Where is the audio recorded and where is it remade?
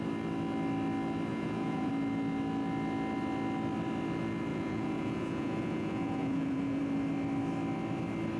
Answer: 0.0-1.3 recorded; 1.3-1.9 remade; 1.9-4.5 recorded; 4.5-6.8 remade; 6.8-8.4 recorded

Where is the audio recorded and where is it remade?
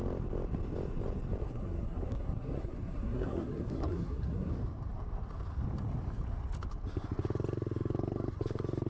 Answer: 0.0-1.4 recorded; 1.4-4.5 remade; 4.5-8.9 recorded